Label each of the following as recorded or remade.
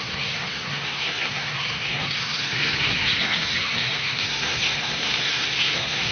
remade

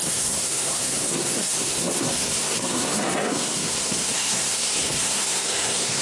remade